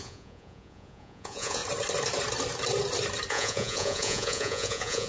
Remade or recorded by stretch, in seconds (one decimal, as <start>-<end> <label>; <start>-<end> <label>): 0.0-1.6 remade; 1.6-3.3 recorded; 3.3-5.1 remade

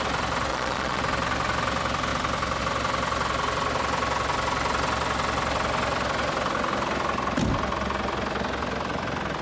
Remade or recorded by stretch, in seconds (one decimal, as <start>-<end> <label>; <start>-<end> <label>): 0.0-0.5 recorded; 0.5-1.0 remade; 1.0-9.4 recorded

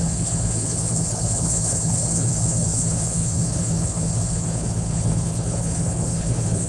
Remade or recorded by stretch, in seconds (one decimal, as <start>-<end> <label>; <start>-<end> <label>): 0.0-6.7 remade